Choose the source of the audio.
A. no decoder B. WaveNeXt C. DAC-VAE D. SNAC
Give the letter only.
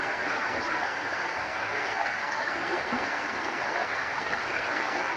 D